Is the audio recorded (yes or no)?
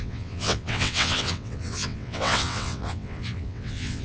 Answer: no